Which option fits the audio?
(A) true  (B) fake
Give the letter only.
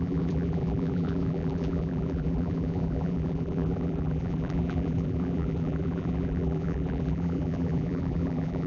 B